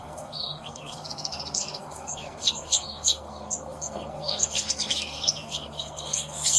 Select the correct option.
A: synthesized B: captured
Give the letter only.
A